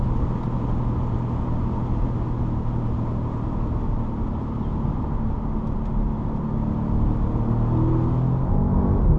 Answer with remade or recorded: recorded